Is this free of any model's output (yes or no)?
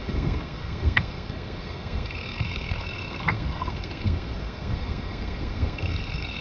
no